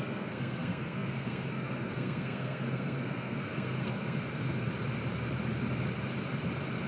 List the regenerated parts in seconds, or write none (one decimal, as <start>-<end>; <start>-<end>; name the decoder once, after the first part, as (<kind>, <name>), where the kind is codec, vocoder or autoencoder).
0.0-4.7 (codec, SNAC)